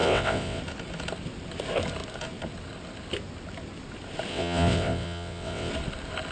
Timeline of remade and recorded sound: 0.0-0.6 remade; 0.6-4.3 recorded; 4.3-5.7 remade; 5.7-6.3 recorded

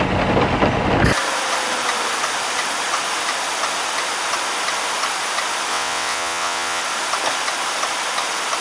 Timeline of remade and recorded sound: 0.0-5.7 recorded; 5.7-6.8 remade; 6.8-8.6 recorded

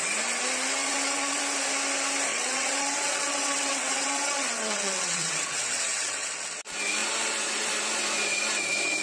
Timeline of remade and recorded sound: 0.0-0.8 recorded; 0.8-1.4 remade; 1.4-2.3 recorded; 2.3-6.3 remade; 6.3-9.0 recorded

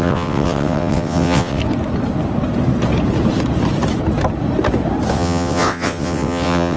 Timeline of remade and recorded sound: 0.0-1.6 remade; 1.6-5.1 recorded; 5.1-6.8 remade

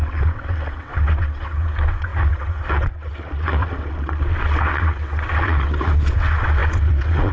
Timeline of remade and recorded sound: 0.0-7.3 remade

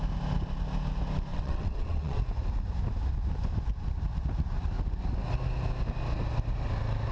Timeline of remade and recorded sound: 0.0-1.3 recorded; 1.3-2.2 remade; 2.2-7.1 recorded

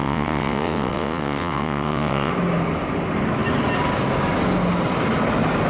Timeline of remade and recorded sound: 0.0-2.3 remade; 2.3-5.7 recorded